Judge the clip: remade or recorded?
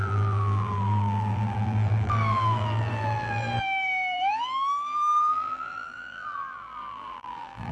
remade